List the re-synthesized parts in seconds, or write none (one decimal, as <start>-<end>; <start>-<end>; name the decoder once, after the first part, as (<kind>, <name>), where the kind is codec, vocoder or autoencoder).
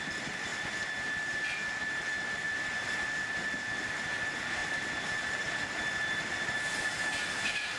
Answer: none